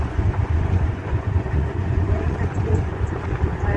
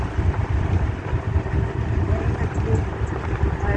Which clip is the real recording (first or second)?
second